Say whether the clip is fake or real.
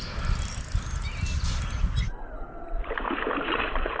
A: real